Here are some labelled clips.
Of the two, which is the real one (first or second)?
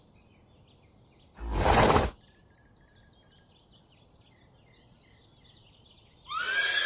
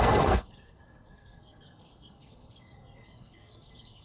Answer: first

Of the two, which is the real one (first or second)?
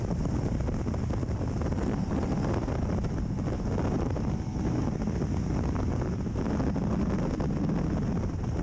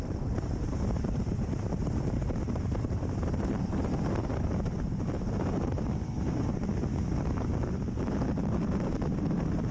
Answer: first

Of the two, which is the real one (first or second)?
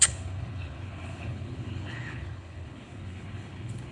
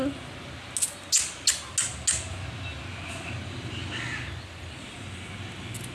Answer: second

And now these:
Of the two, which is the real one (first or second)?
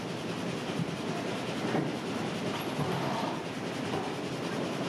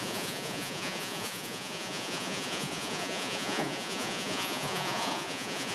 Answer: first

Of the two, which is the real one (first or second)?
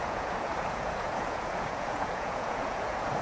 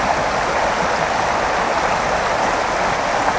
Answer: second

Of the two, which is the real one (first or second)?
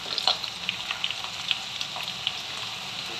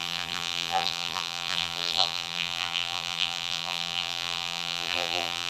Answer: first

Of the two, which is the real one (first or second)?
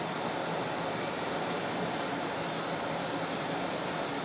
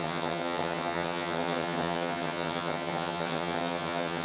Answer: first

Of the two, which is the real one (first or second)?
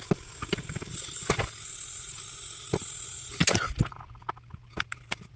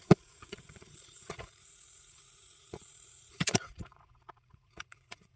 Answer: first